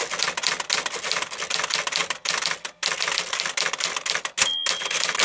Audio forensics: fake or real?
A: real